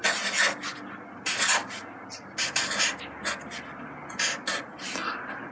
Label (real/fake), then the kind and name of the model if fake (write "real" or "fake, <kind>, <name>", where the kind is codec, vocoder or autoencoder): real